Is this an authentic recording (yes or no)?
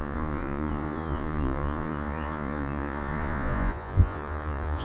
no